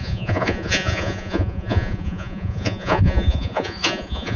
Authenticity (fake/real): fake